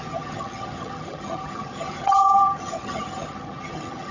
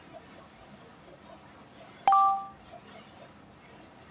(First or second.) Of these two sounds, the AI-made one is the first